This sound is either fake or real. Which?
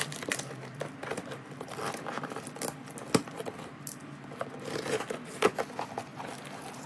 real